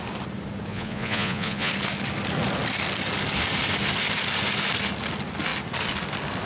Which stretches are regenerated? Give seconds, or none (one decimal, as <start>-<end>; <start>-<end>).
0.7-1.7